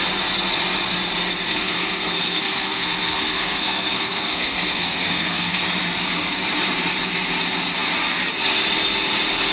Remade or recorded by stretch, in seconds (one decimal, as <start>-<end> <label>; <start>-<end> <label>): 0.0-1.5 recorded; 1.5-5.6 remade; 5.6-9.5 recorded